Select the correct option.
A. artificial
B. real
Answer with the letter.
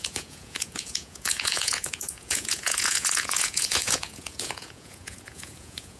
A